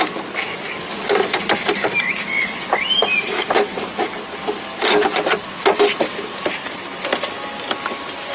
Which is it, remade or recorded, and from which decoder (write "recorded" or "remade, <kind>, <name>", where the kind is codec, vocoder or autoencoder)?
recorded